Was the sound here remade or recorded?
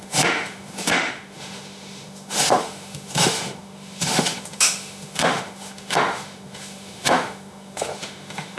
remade